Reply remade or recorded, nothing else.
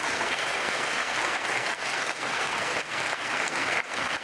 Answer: remade